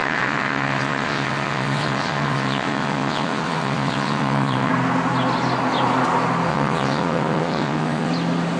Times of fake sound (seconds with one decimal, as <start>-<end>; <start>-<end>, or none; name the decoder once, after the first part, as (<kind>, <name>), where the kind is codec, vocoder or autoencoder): 0.0-4.7 (vocoder, WaveNeXt); 6.5-8.1